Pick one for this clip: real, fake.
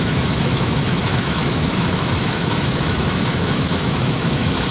fake